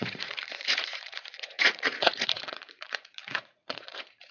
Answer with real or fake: fake